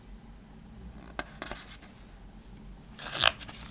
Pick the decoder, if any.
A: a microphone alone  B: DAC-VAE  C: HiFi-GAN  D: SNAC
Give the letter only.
A